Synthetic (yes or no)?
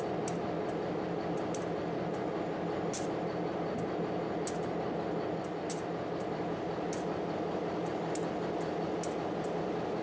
no